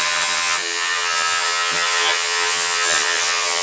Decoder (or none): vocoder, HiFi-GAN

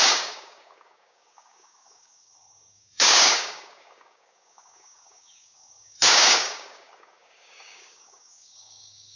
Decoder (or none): codec, DAC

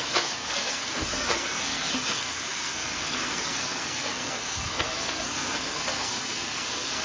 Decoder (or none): codec, SNAC